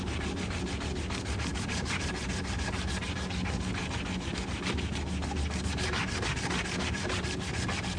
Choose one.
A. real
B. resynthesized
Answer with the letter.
A